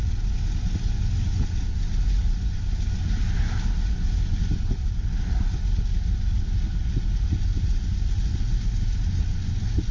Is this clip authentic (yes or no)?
yes